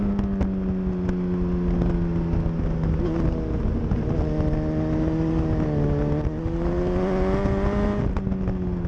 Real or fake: real